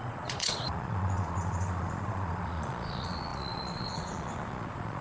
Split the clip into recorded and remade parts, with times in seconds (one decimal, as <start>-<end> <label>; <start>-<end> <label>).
0.0-5.0 remade